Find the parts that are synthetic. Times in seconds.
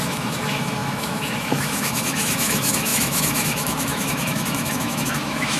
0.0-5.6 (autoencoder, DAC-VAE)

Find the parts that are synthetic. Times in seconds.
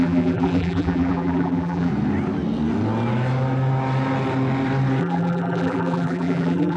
0.0-1.9 (vocoder, BigVGAN v2); 5.0-6.8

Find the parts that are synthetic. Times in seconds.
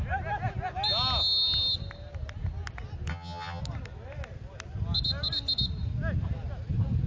3.1-3.6 (vocoder, HiFi-GAN)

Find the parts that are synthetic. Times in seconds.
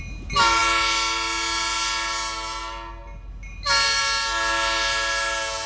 none